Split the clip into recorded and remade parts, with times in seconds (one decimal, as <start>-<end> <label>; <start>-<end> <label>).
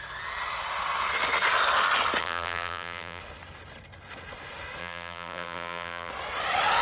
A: 0.0-2.2 recorded; 2.2-3.2 remade; 3.2-4.8 recorded; 4.8-6.1 remade; 6.1-6.8 recorded